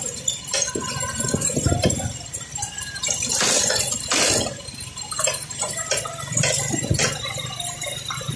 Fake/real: real